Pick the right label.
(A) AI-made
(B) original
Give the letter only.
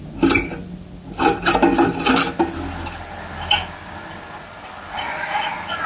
B